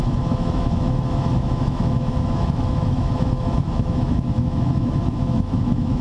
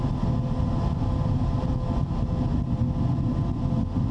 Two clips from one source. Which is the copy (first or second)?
first